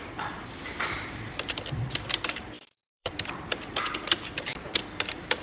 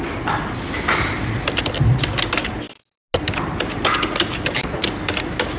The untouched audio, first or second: second